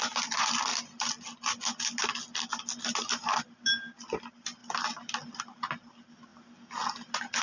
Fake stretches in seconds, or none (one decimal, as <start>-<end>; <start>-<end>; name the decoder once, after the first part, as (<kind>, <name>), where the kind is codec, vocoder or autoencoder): 0.0-0.7 (vocoder, BigVGAN v2); 2.7-6.3